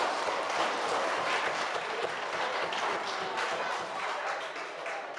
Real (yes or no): no